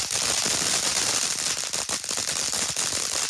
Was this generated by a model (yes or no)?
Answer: no